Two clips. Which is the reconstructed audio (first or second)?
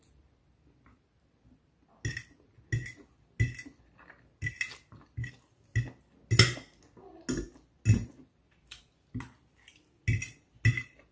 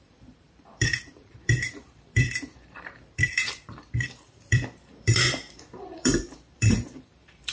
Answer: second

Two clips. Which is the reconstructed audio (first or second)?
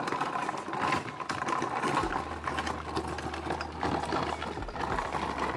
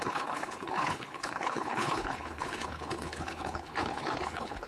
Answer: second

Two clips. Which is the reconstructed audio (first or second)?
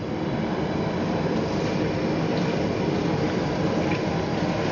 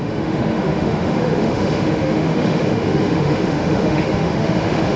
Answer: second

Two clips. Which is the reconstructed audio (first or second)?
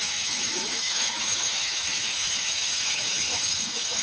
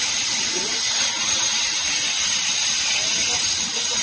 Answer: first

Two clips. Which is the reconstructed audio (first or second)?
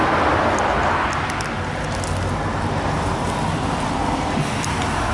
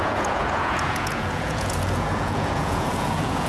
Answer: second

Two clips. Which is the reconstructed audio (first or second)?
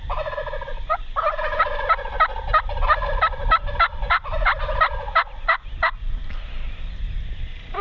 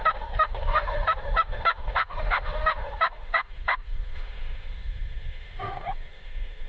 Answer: second